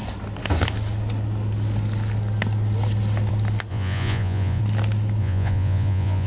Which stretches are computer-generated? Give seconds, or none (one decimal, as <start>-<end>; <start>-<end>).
3.7-4.6; 5.2-6.3